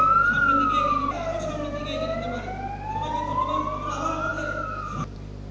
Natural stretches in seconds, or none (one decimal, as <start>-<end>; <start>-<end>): 0.0-5.5